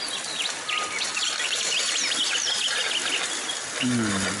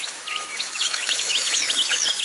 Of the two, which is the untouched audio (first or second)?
first